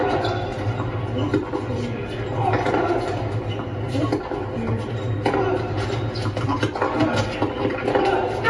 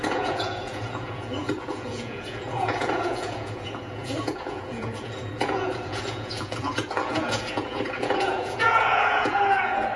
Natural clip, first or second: first